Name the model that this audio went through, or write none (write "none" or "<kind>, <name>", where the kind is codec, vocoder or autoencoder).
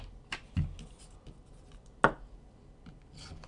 none